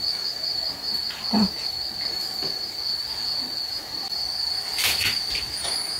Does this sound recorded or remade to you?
recorded